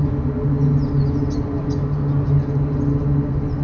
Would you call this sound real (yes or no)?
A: yes